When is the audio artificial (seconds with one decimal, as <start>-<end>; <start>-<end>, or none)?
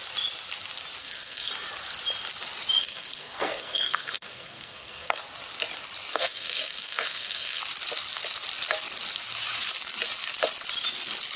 1.0-1.5; 2.8-5.2; 6.1-7.6